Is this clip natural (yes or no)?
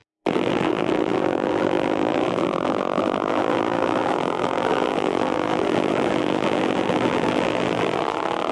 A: no